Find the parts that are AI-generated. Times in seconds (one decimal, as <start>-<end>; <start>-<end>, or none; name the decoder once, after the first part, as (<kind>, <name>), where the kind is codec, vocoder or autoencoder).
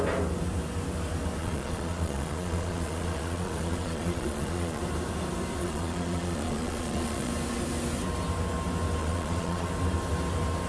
1.4-4.8 (vocoder, Vocos); 5.6-7.3; 9.0-9.7